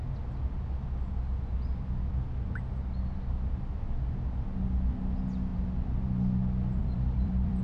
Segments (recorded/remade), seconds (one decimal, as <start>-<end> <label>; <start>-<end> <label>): 0.0-5.5 recorded; 5.5-6.0 remade; 6.0-6.8 recorded; 6.8-7.6 remade